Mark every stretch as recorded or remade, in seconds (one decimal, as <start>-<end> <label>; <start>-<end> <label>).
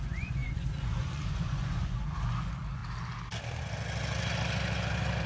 0.0-2.8 remade; 2.8-5.3 recorded